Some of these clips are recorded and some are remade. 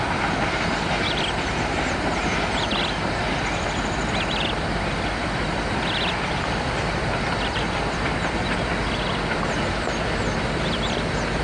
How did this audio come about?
remade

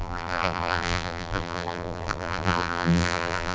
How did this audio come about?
remade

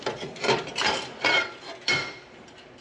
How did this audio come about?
remade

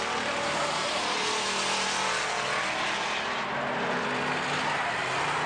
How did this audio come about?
recorded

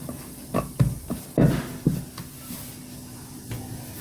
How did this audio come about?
recorded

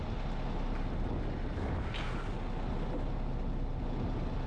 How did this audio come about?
recorded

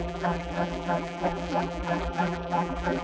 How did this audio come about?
remade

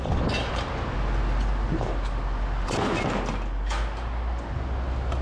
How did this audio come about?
recorded